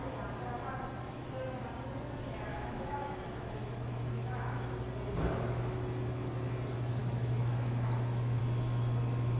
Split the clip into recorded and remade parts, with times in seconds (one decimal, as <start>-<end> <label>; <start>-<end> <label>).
0.0-2.5 recorded; 2.5-4.8 remade; 4.8-7.0 recorded; 7.0-8.4 remade; 8.4-9.4 recorded